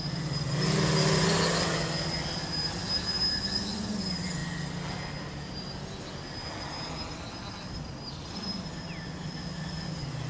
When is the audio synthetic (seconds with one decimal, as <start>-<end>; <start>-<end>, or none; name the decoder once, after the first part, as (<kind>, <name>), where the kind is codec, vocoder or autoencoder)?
none